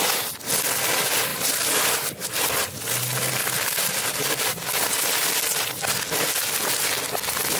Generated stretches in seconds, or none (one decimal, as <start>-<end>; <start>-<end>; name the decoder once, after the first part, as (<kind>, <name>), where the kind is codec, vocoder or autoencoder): 1.3-2.4 (vocoder, BigVGAN v2); 3.4-4.3